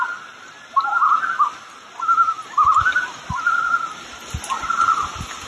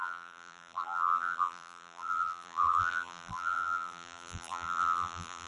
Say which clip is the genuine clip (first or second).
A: first